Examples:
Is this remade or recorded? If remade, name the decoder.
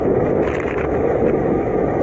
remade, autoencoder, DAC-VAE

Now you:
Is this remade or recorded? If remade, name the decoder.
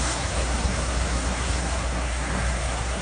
remade, codec, SNAC